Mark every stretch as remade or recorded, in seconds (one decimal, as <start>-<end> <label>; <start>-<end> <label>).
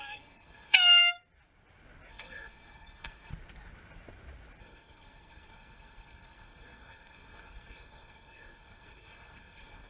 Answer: 0.0-1.0 remade; 1.0-2.1 recorded; 2.1-3.3 remade; 3.3-4.6 recorded; 4.6-9.9 remade